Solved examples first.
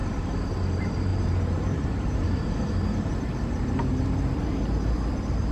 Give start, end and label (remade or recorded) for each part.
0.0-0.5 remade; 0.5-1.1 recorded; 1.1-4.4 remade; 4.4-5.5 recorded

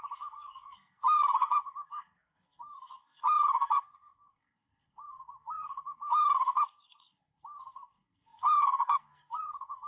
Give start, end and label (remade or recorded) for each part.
0.0-9.9 remade

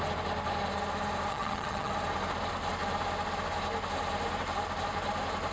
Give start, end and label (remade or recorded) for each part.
0.0-1.3 recorded; 1.3-1.9 remade; 1.9-5.5 recorded

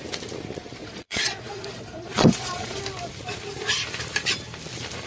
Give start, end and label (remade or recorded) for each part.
0.0-0.8 recorded; 0.8-2.8 remade; 2.8-5.1 recorded

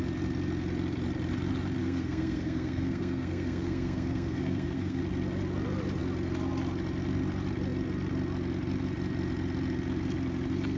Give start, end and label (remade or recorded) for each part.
0.0-1.8 recorded; 1.8-5.0 remade; 5.0-10.8 recorded

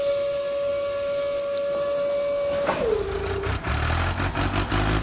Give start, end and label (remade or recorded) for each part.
0.0-5.0 recorded